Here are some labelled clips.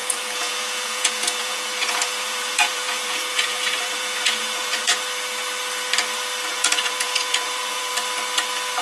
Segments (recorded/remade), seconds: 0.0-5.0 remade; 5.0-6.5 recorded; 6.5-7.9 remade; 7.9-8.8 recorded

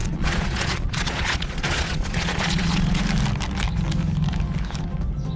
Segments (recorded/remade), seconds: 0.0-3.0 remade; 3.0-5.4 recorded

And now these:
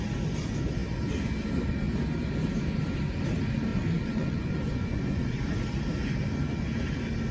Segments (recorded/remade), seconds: 0.0-3.7 recorded; 3.7-5.6 remade; 5.6-7.3 recorded